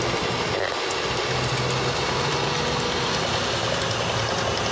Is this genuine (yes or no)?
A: yes